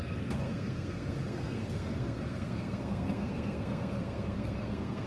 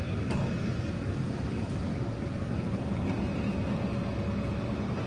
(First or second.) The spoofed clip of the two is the first